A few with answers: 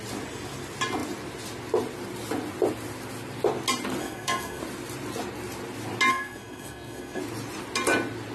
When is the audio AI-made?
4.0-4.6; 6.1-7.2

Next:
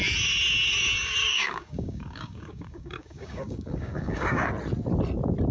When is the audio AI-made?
1.2-4.5